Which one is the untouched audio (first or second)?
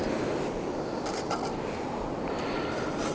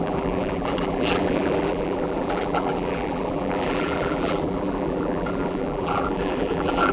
first